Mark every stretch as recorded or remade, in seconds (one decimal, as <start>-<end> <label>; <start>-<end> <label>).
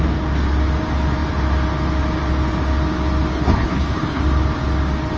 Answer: 0.0-3.3 recorded; 3.3-4.2 remade; 4.2-5.2 recorded